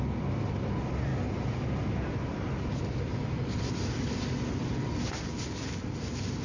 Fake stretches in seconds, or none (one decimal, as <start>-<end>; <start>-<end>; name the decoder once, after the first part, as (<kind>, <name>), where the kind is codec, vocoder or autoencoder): none